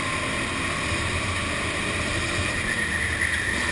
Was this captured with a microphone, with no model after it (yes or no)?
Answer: yes